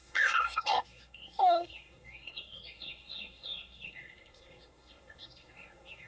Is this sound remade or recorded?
remade